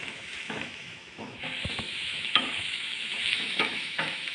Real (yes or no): no